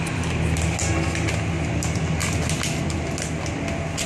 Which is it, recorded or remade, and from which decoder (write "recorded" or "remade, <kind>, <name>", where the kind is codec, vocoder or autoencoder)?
recorded